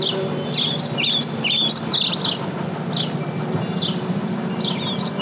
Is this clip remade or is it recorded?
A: recorded